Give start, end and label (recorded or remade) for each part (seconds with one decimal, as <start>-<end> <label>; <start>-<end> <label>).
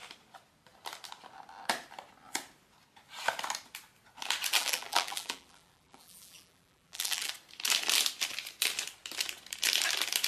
0.0-4.6 recorded; 4.6-7.3 remade; 7.3-10.3 recorded